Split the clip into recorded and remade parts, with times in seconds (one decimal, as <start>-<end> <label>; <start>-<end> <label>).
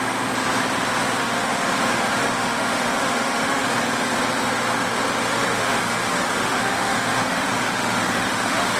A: 0.0-1.2 recorded; 1.2-3.7 remade; 3.7-5.3 recorded; 5.3-8.8 remade